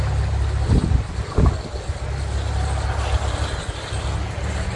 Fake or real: real